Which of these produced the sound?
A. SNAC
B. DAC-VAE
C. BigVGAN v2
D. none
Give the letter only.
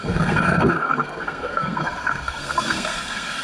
A